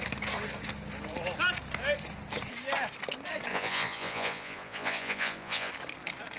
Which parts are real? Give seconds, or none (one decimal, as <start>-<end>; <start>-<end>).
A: 0.0-3.5; 5.7-6.4